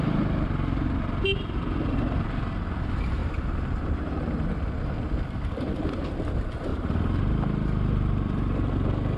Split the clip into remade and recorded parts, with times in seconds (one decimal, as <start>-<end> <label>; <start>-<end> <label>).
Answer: 0.0-6.7 recorded; 6.7-9.2 remade